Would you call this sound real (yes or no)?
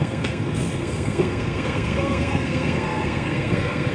no